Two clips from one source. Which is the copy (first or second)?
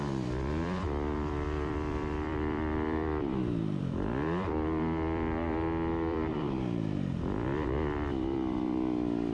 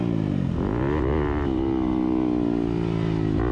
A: first